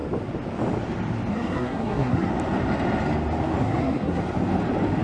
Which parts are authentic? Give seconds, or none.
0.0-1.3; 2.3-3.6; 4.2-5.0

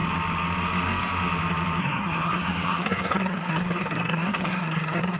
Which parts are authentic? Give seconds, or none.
0.0-1.8

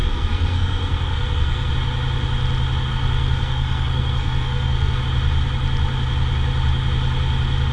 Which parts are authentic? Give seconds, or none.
1.7-2.9; 5.0-7.7

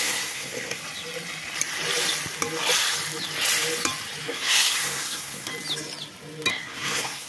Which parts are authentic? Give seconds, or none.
0.8-4.2; 5.5-6.5

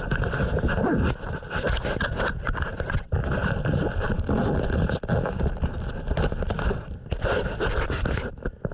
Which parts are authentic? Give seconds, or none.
0.0-8.7

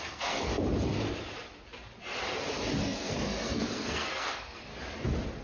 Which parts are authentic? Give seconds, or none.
0.5-2.8; 4.7-5.4

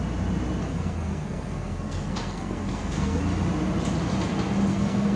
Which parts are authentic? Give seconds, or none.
0.0-0.6; 3.2-4.7